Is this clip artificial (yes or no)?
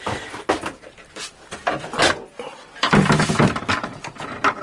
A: yes